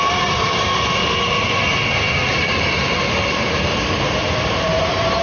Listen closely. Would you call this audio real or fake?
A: real